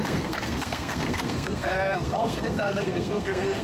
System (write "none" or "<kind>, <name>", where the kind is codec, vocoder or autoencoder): codec, SNAC